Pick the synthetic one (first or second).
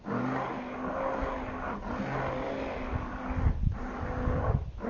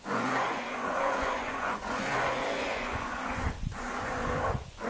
second